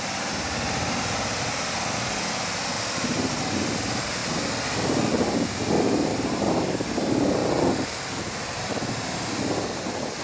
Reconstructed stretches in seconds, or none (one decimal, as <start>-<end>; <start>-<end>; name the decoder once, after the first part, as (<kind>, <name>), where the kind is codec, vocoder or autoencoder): 0.0-4.2 (vocoder, BigVGAN v2); 6.1-7.4